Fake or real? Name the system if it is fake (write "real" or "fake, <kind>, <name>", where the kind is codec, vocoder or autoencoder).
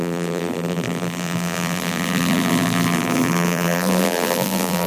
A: fake, vocoder, BigVGAN v2